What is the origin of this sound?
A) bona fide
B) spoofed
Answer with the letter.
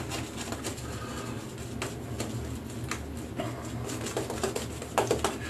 A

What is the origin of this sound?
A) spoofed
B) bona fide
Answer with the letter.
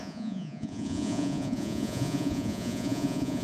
A